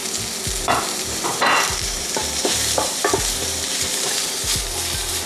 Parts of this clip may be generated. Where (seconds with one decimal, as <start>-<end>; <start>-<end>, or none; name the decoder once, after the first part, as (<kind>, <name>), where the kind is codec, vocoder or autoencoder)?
0.8-4.4 (vocoder, BigVGAN v2)